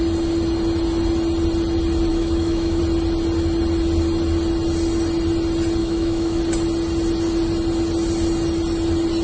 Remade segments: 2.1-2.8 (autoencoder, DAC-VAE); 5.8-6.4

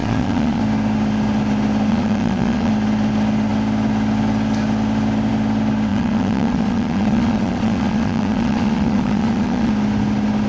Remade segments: 0.0-0.6 (vocoder, Vocos); 1.9-2.7; 5.9-9.7

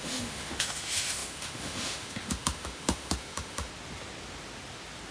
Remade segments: 0.0-3.7 (autoencoder, DAC-VAE)

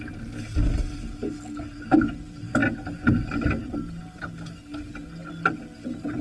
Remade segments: none

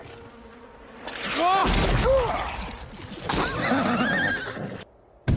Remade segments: none

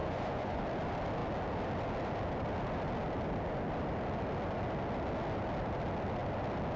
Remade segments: 0.0-0.6 (vocoder, Vocos)

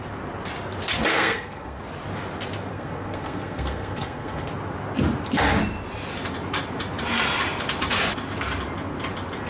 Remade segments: 1.1-1.8 (codec, SNAC); 2.7-4.5